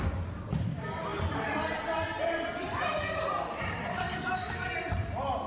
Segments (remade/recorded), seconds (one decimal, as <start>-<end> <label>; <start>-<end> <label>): 0.0-4.1 recorded; 4.1-4.7 remade; 4.7-5.5 recorded